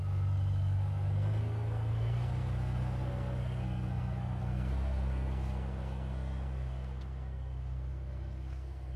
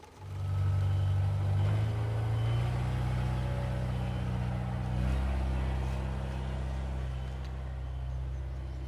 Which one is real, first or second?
second